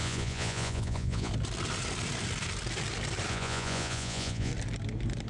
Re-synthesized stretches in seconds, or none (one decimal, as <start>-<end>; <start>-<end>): 0.0-1.3; 3.3-4.5